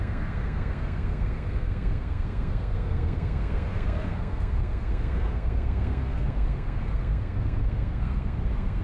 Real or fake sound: fake